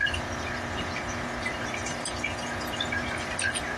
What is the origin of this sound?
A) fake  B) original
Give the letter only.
B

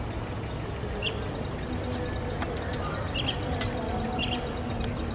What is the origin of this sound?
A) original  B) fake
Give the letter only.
A